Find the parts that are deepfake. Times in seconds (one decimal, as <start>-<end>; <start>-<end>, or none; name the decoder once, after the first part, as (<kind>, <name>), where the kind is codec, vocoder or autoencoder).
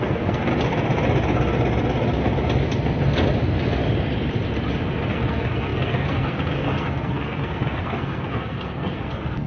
0.0-0.5 (codec, SNAC); 5.1-9.5